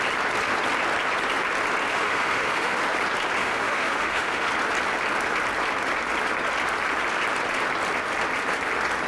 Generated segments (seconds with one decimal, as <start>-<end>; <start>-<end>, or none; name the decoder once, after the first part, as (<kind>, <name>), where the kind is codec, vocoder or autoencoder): 1.9-2.8 (autoencoder, DAC-VAE); 3.4-4.5